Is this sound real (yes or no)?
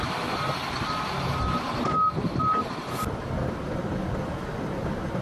yes